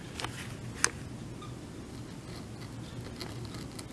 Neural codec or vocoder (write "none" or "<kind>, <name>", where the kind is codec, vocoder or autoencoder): none